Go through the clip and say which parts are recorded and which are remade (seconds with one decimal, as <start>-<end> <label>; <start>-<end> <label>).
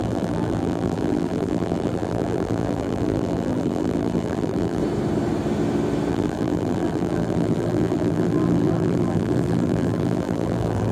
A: 0.0-4.8 remade; 4.8-6.1 recorded; 6.1-10.9 remade